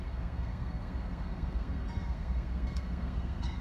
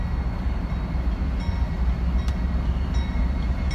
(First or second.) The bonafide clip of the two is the second